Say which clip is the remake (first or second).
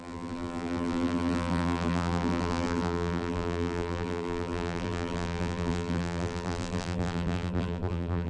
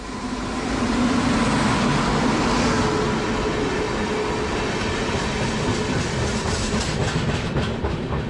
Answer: first